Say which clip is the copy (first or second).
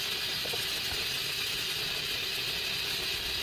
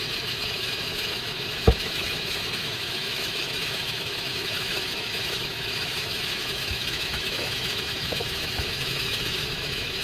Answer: second